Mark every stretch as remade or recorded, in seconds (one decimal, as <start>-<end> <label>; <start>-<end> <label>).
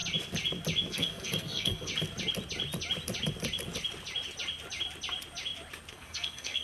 0.0-0.9 recorded; 0.9-1.9 remade; 1.9-5.9 recorded; 5.9-6.6 remade